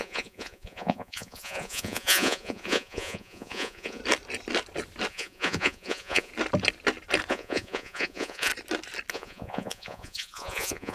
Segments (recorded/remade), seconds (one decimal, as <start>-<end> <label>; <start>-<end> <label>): 0.0-4.0 remade; 4.0-5.1 recorded; 5.1-6.3 remade; 6.3-7.3 recorded; 7.3-8.5 remade; 8.5-9.1 recorded; 9.1-10.9 remade